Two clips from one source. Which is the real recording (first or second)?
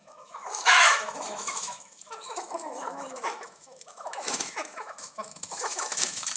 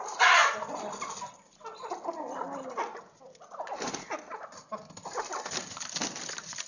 second